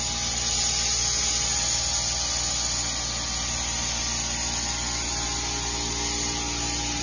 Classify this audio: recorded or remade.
recorded